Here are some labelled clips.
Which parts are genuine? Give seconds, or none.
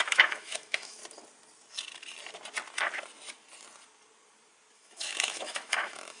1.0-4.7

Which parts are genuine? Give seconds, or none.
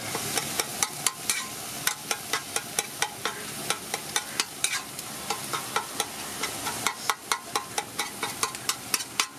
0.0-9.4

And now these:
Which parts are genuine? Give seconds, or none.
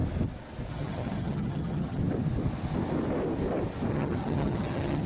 0.0-0.7; 2.0-3.9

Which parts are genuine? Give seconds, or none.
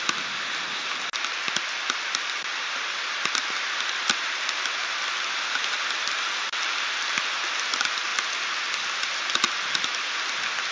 0.0-10.7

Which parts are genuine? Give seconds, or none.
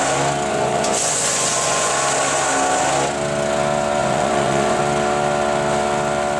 0.0-0.5; 1.9-4.0; 4.8-6.4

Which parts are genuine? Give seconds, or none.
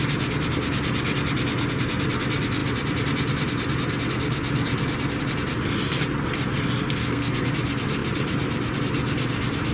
0.0-7.0; 7.5-9.7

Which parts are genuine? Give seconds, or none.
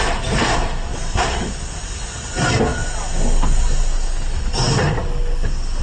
0.0-5.8